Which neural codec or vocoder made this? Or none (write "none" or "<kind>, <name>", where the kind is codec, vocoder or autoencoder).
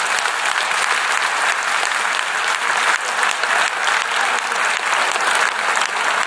none